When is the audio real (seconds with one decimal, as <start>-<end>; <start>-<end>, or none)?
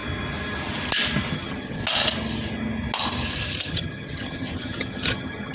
0.0-1.3; 1.8-3.7